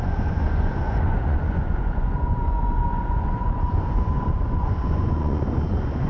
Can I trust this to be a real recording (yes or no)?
no